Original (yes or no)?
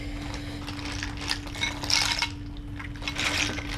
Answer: yes